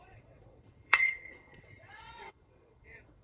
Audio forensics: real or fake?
fake